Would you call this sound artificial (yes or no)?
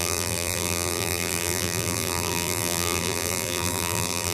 yes